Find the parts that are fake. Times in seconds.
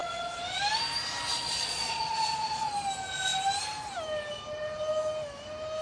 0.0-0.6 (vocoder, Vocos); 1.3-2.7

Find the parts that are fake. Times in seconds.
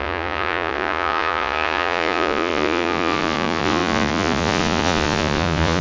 0.0-5.8 (vocoder, Vocos)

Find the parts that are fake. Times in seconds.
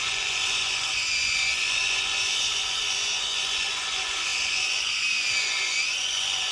0.0-6.5 (vocoder, Vocos)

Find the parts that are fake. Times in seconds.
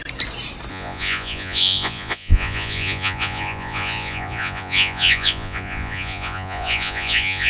0.7-7.5 (vocoder, Vocos)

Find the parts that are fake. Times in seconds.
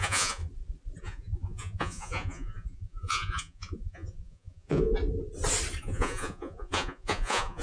0.0-0.4 (vocoder, Vocos); 1.0-5.0; 5.8-7.6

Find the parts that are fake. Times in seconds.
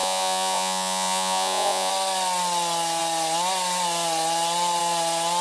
0.0-1.9 (vocoder, Vocos)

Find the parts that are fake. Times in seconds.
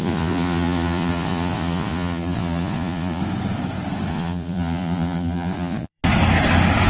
0.0-3.2 (vocoder, Vocos); 4.1-6.0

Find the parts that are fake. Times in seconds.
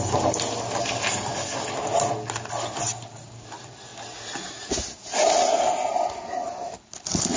none